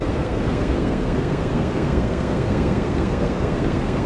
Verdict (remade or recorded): remade